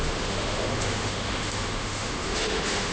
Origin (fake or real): fake